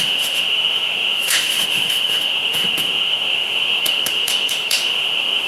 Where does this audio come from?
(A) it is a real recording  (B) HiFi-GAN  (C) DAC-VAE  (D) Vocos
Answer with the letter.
C